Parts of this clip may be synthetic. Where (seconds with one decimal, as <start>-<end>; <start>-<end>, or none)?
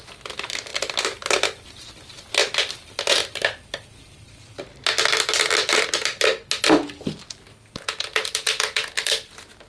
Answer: none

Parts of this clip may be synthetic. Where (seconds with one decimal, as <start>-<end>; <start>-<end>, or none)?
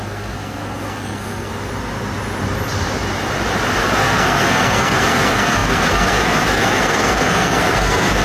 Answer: 0.0-1.5; 3.8-8.2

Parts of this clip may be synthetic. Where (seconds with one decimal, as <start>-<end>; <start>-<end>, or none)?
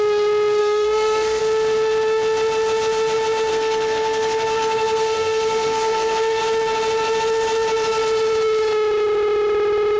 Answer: 0.6-1.4; 3.5-6.4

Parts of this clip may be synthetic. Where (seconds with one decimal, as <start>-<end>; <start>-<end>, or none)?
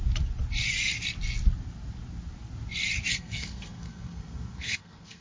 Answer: 3.1-5.2